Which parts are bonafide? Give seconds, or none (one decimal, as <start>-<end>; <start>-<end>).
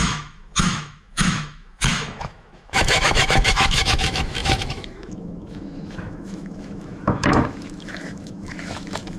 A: none